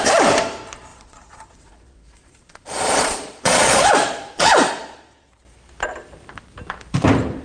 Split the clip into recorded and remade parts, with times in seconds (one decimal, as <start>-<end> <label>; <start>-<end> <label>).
0.0-0.9 recorded; 0.9-5.3 remade; 5.3-7.4 recorded